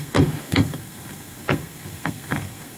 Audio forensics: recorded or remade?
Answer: remade